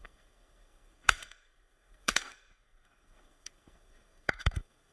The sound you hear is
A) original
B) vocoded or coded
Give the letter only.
B